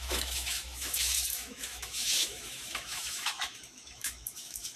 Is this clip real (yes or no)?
no